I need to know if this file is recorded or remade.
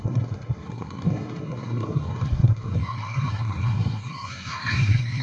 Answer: remade